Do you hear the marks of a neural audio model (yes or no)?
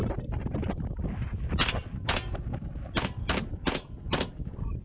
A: no